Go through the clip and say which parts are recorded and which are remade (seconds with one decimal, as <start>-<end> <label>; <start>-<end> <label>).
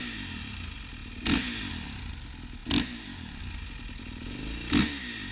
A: 0.0-5.3 recorded